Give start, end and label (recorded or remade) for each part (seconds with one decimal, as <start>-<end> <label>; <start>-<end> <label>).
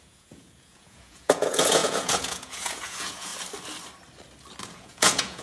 0.0-3.3 remade; 3.3-4.7 recorded; 4.7-5.4 remade